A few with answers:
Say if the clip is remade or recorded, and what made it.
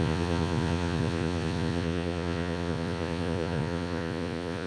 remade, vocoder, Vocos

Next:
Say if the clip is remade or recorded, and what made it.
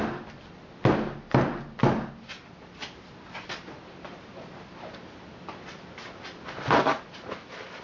recorded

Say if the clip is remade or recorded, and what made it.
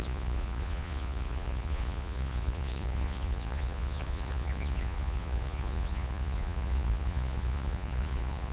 remade, vocoder, Vocos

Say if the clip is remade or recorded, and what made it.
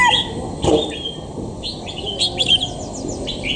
recorded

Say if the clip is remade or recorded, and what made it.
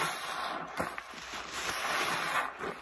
recorded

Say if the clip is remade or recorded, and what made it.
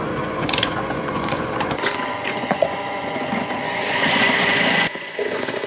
remade, vocoder, Vocos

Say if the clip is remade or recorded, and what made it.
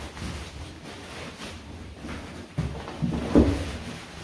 recorded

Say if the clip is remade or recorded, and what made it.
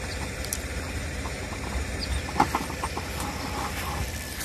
recorded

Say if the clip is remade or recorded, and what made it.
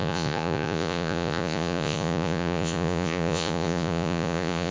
remade, vocoder, Vocos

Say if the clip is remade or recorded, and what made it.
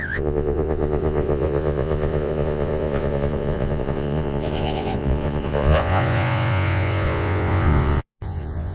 remade, vocoder, Vocos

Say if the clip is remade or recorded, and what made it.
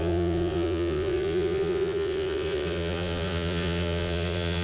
remade, vocoder, Vocos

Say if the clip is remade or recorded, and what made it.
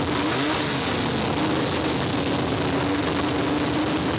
recorded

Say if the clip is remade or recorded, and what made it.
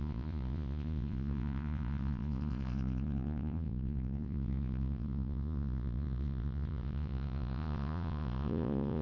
remade, vocoder, Vocos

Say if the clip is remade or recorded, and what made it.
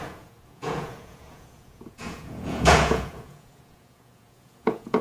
remade, vocoder, Vocos